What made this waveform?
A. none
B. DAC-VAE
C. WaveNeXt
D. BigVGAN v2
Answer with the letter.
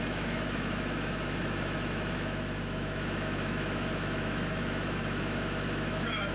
B